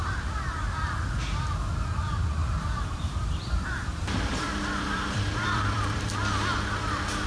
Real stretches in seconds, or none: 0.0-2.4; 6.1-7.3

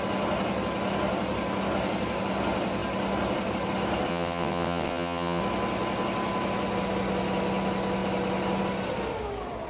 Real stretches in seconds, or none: 0.0-4.1; 5.4-9.7

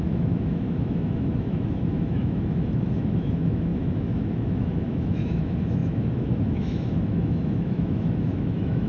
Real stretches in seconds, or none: none

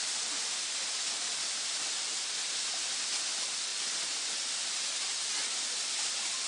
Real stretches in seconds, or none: 0.0-6.5